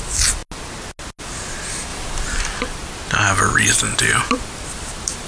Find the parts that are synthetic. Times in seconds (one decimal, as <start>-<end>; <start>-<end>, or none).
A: 0.0-0.4; 1.2-2.8; 4.0-5.3

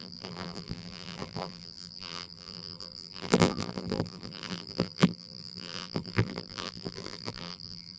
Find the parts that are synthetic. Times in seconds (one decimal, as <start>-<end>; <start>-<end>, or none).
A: 0.0-8.0

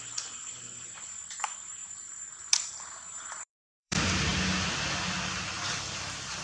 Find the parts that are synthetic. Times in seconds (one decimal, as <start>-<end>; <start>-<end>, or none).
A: 0.0-1.8; 2.7-4.3; 5.7-6.4

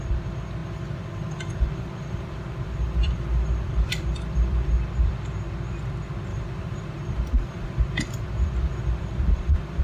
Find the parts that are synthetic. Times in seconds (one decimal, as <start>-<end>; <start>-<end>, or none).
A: 0.6-4.7; 6.3-9.8

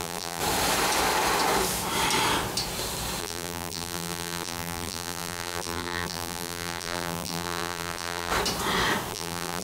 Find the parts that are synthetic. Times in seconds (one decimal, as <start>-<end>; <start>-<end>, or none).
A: 0.0-0.4; 3.2-8.3; 9.1-9.6

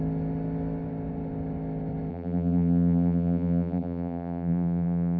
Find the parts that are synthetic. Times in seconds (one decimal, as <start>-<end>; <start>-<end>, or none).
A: 2.1-5.2

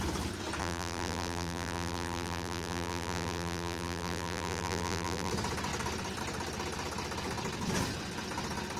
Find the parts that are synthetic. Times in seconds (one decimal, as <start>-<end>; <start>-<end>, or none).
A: 0.6-5.3

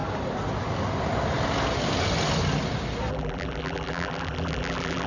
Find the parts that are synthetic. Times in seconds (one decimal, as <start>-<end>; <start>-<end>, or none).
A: 3.1-5.1